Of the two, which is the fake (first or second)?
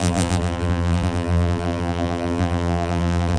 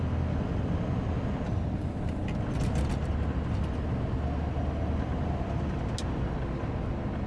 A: first